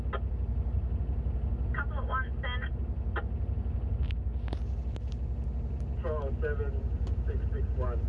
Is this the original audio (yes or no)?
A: yes